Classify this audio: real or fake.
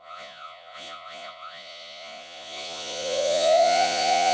fake